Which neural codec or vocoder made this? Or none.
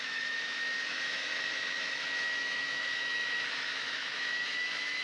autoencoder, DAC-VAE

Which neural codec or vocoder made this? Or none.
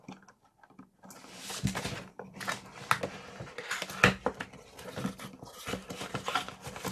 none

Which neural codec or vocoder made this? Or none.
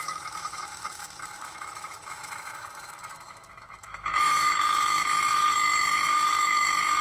autoencoder, DAC-VAE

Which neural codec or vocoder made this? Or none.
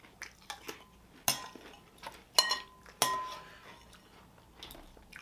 none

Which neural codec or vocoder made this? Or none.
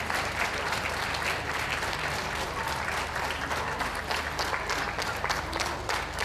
none